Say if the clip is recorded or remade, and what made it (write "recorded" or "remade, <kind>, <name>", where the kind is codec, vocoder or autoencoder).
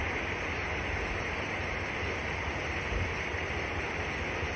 recorded